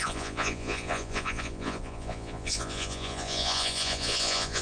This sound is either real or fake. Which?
fake